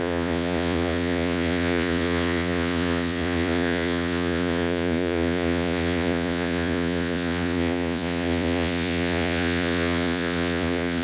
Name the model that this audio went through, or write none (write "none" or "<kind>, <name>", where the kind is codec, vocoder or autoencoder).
vocoder, Vocos